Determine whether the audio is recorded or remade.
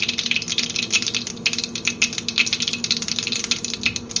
recorded